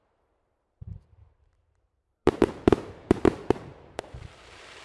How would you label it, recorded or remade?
remade